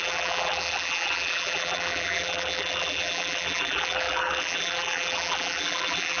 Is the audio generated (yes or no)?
yes